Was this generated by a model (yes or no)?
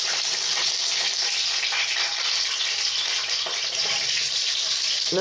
yes